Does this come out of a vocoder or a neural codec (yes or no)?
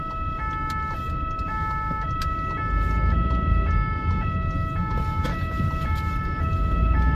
no